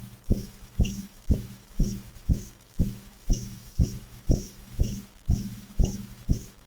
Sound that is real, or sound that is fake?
fake